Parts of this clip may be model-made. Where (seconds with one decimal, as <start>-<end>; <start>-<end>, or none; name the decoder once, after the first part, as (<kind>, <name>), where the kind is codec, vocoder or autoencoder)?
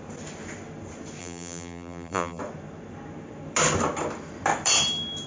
1.2-2.4 (vocoder, BigVGAN v2)